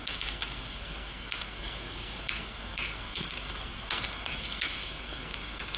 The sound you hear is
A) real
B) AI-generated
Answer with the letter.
B